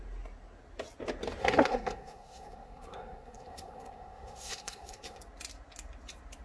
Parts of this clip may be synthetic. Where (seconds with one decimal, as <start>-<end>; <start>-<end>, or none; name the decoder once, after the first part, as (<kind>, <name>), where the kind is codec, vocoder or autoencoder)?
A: 1.4-5.2 (codec, SNAC)